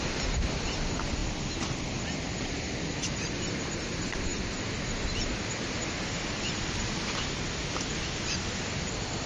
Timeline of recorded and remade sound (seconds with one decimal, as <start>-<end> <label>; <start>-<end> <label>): 0.0-9.3 recorded